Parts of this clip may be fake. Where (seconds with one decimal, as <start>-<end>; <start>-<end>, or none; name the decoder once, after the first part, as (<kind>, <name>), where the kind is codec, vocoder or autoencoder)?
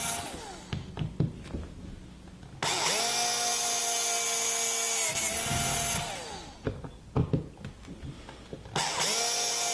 none